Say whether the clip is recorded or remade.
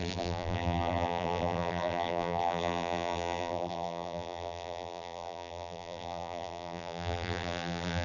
remade